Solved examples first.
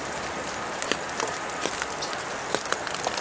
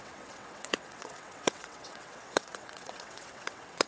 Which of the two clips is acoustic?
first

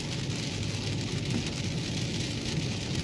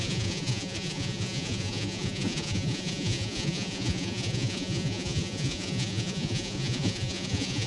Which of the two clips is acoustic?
first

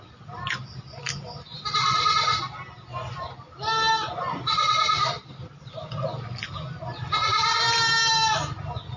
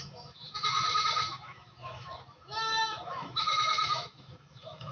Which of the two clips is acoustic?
first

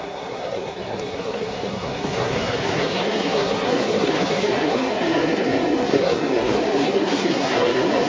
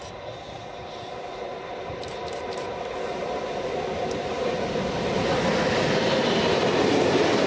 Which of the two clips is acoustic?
second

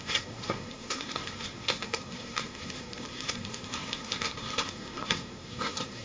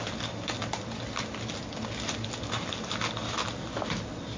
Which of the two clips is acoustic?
second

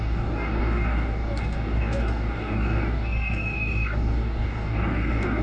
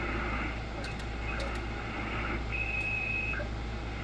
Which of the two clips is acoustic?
second